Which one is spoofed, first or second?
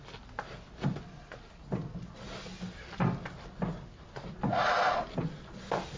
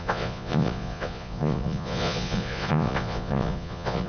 second